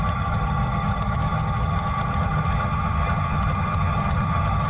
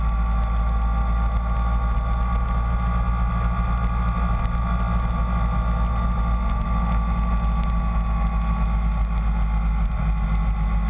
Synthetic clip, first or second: first